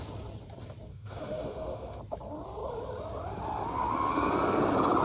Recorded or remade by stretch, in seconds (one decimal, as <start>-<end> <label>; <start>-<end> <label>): 0.0-0.9 recorded; 0.9-2.0 remade; 2.0-5.0 recorded